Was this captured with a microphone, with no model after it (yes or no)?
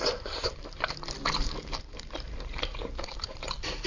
no